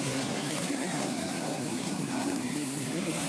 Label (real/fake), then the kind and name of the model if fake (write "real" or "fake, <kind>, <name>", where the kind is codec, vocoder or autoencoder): fake, codec, SNAC